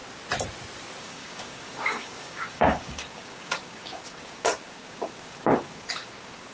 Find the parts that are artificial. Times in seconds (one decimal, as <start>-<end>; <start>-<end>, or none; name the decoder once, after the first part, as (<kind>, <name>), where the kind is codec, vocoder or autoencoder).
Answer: 1.0-6.5 (codec, DAC)